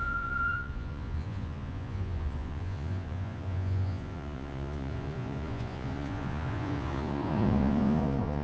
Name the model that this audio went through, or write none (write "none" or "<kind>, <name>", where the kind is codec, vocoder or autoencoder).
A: vocoder, Vocos